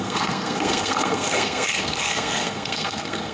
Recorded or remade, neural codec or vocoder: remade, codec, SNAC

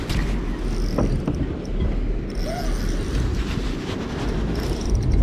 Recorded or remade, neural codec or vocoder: recorded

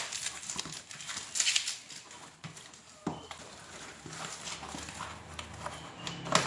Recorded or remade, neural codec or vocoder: recorded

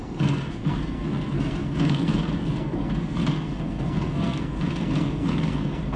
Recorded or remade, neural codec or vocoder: remade, codec, SNAC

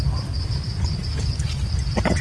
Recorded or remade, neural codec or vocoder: recorded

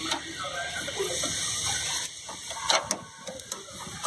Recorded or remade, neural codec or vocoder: recorded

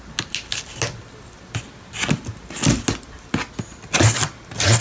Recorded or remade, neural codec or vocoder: recorded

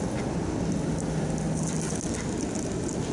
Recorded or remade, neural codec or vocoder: recorded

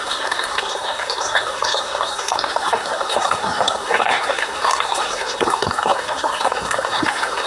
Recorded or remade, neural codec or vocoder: remade, codec, SNAC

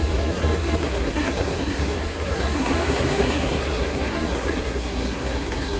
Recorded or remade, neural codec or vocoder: remade, codec, SNAC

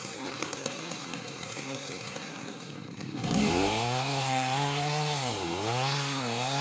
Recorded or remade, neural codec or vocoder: remade, codec, SNAC